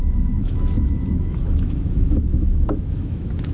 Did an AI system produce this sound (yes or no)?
yes